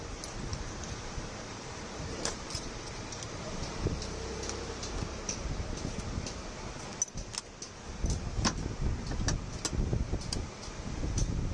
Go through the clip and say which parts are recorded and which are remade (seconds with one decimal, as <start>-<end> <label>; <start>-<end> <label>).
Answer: 0.0-0.5 recorded; 0.5-4.0 remade; 4.0-11.5 recorded